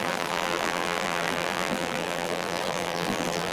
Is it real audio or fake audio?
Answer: fake